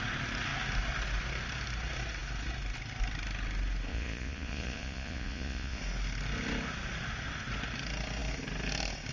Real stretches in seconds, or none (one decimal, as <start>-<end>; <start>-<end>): 0.0-3.9; 5.8-9.1